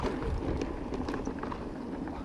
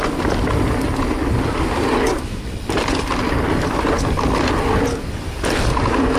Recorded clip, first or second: second